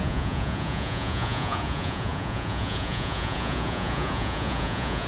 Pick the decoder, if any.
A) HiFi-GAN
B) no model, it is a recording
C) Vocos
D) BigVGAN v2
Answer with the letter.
C